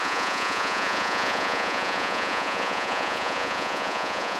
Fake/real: fake